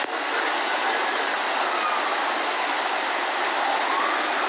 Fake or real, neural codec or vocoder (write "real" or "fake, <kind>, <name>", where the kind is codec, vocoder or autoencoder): real